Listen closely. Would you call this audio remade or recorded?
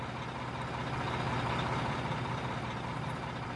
recorded